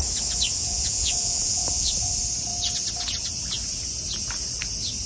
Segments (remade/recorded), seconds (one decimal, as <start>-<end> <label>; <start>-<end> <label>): 0.0-0.5 recorded; 0.5-1.9 remade; 1.9-5.1 recorded